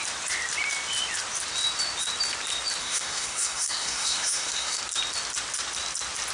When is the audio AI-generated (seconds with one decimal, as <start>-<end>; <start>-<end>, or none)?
2.8-4.8